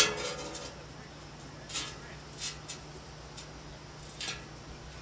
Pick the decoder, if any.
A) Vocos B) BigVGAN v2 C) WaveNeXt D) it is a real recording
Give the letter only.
D